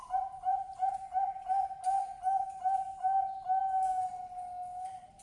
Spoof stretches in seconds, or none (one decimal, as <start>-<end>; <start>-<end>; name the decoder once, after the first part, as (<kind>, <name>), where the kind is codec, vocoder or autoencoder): none